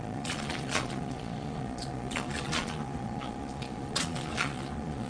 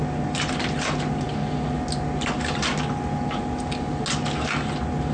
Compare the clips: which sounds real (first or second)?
second